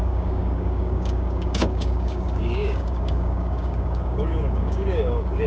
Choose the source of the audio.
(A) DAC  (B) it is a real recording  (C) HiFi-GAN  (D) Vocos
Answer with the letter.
A